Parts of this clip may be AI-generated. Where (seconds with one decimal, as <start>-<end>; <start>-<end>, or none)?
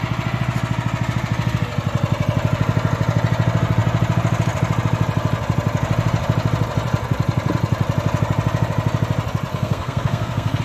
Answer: 9.5-10.6